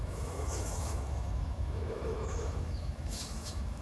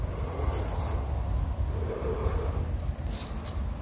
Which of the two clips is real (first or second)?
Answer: second